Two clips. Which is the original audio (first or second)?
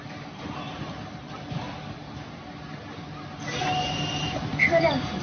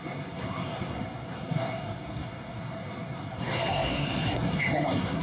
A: first